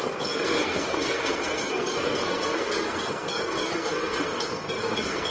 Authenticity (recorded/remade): remade